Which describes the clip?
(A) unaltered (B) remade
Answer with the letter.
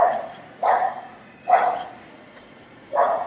B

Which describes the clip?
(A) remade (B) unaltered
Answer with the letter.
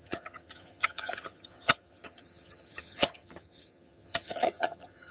A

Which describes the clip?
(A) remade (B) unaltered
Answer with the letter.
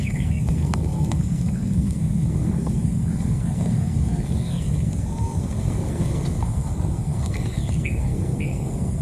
A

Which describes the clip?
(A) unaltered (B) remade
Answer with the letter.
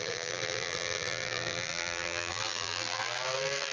B